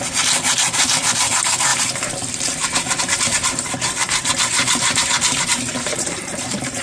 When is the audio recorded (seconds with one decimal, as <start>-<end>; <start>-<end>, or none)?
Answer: 1.7-3.0